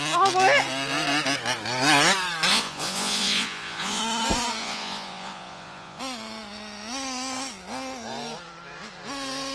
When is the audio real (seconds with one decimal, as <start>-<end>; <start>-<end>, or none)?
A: 0.0-2.5; 4.0-4.6; 6.0-9.5